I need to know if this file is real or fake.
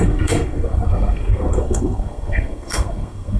fake